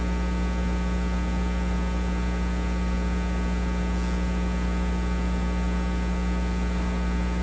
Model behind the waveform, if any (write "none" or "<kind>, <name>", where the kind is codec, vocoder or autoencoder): none